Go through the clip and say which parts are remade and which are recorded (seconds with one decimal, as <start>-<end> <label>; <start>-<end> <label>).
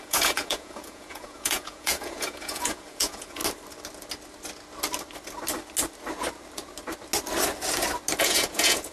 0.0-3.4 remade; 3.4-8.2 recorded; 8.2-8.9 remade